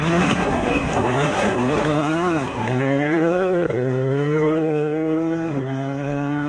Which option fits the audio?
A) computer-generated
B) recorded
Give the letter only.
A